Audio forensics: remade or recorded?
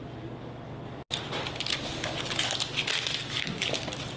recorded